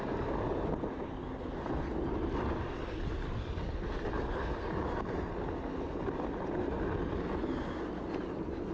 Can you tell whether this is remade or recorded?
recorded